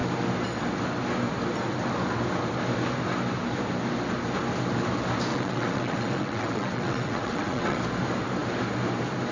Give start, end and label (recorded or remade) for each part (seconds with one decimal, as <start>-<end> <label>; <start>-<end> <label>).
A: 0.0-5.3 recorded; 5.3-7.8 remade; 7.8-9.3 recorded